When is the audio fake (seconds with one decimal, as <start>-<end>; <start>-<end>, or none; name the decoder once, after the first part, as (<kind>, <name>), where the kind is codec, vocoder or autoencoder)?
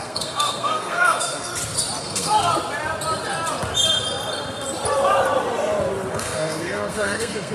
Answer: 0.0-1.5 (codec, SNAC); 2.0-2.5; 6.1-7.5